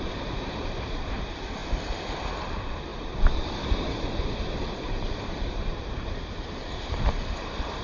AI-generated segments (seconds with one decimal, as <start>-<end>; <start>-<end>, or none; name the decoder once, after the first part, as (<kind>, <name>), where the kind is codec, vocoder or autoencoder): 0.0-1.6 (vocoder, BigVGAN v2); 2.4-7.8